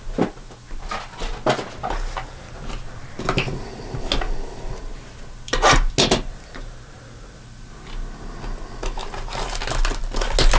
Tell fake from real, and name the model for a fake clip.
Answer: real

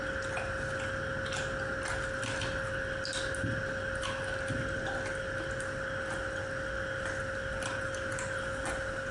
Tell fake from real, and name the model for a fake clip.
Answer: real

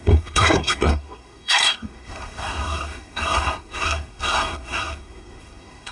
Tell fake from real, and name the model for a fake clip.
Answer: fake, codec, SNAC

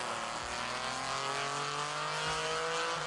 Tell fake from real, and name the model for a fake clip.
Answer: real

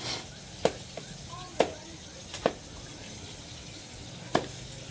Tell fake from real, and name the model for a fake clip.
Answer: real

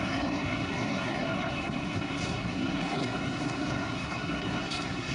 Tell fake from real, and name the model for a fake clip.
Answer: fake, codec, SNAC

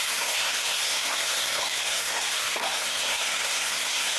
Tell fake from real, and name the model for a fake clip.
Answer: fake, codec, SNAC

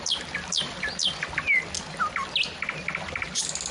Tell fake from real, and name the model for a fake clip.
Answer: real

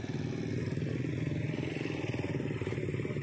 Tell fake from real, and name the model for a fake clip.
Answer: real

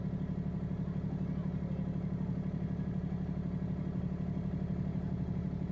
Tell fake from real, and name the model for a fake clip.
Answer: real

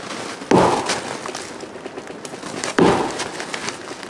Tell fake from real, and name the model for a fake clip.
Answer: real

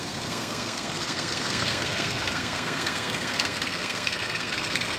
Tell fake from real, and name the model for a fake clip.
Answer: fake, codec, SNAC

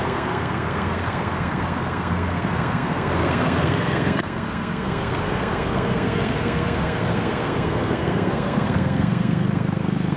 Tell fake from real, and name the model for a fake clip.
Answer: fake, codec, SNAC